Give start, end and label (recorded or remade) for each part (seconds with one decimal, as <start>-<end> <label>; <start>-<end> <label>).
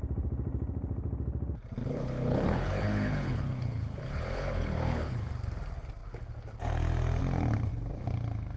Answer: 0.0-1.8 recorded; 1.8-5.3 remade; 5.3-8.6 recorded